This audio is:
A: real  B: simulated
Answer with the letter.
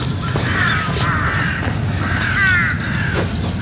A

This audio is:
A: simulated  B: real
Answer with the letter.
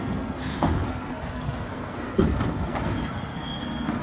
A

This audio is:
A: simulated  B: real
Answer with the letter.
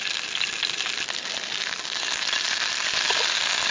B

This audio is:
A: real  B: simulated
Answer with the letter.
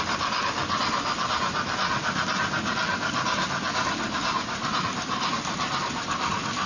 A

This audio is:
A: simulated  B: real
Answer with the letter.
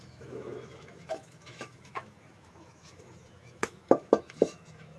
A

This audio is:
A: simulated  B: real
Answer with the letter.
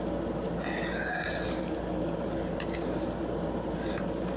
B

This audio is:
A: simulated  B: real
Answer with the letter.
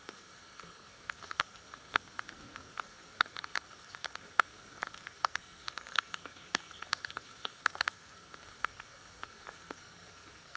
A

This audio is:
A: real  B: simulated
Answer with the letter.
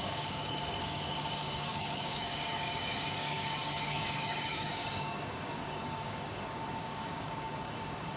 B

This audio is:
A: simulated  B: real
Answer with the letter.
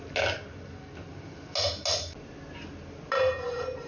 B